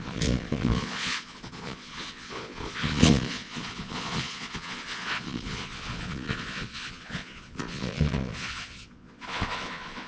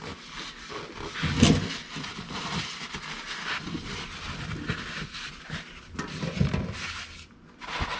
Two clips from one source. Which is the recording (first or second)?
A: second